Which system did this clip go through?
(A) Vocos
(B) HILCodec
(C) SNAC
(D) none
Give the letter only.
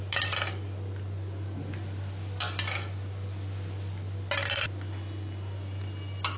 D